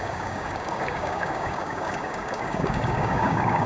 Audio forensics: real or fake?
fake